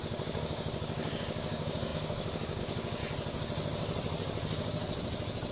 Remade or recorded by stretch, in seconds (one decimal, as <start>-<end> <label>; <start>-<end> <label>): 0.0-3.0 remade; 3.0-5.5 recorded